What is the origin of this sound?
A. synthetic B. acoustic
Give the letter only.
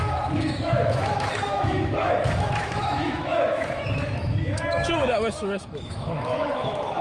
A